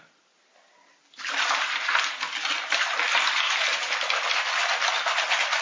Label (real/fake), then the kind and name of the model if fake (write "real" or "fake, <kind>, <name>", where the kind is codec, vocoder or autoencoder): real